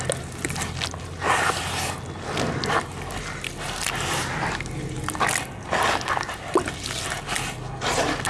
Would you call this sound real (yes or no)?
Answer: yes